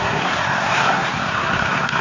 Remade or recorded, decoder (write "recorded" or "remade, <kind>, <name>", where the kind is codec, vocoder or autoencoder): remade, codec, SNAC